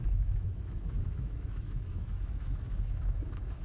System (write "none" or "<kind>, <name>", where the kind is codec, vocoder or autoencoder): autoencoder, DAC-VAE